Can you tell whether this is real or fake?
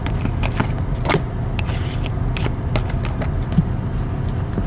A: real